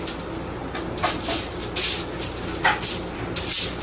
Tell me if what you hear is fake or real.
real